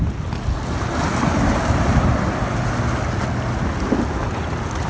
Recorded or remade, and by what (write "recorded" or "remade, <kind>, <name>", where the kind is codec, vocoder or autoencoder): recorded